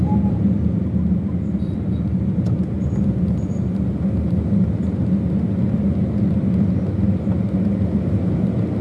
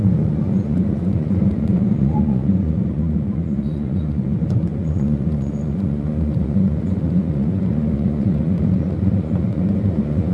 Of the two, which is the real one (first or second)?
first